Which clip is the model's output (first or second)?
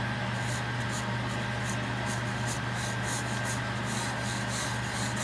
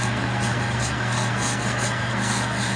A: second